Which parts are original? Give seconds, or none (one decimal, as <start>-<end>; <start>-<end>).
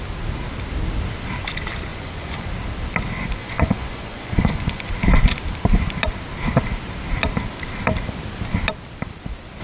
0.0-1.9; 2.5-3.4; 4.9-9.6